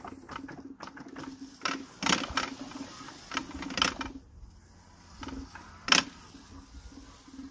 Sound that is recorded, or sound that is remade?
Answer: recorded